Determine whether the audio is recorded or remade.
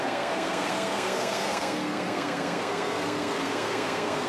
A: remade